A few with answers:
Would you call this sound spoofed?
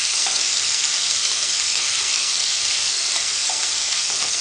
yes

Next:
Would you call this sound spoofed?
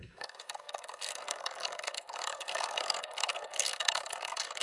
yes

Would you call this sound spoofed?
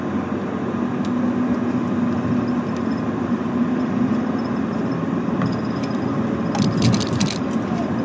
no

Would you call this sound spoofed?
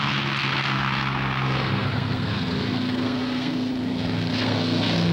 yes